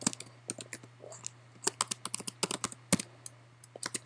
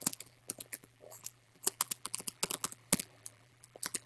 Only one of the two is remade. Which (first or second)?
second